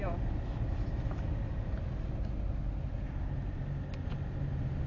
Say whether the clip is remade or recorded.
recorded